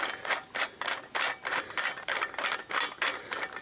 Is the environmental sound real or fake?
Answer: real